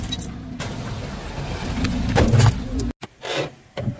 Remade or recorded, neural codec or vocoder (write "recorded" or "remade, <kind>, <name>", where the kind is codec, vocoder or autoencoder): recorded